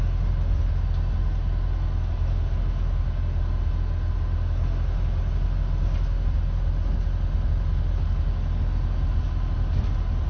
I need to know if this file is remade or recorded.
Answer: recorded